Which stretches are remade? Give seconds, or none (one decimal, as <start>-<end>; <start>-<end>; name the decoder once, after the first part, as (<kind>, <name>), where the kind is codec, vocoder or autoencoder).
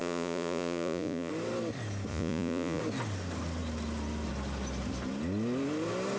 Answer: 0.0-1.3 (vocoder, Vocos); 2.1-2.8